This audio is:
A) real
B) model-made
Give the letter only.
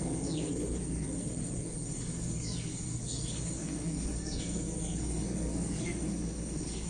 B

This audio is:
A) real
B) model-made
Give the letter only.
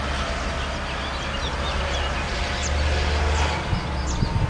A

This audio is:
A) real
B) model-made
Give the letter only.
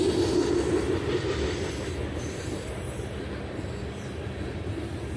A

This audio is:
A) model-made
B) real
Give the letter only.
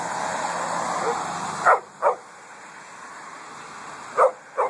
B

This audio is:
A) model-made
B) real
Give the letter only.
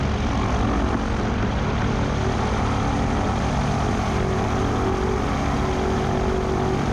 B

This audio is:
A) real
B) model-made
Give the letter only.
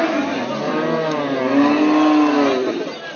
A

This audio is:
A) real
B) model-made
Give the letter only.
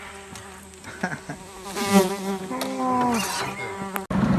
A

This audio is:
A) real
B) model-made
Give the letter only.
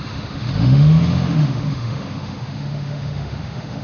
B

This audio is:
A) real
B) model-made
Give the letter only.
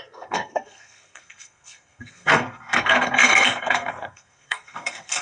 B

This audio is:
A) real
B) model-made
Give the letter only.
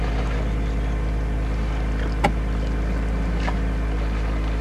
A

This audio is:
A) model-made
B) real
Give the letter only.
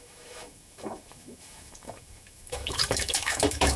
A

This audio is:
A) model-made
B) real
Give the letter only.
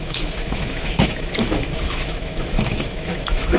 A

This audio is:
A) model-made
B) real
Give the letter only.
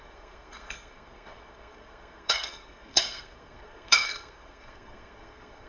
A